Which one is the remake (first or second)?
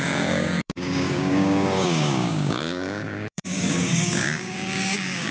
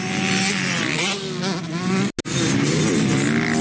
first